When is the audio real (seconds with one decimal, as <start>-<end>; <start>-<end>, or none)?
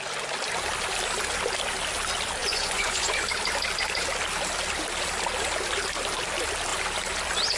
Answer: 0.0-2.4; 3.2-7.6